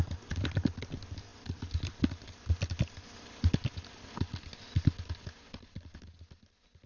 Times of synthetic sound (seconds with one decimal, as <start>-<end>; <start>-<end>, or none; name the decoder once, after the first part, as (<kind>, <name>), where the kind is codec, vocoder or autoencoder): none